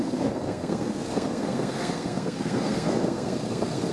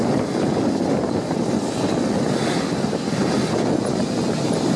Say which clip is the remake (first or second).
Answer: first